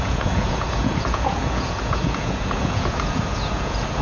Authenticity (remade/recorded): remade